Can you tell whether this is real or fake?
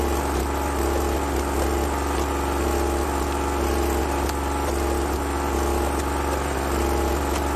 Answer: real